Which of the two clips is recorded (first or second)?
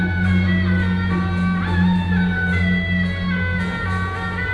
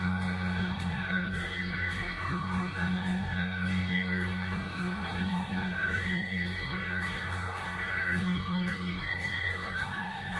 first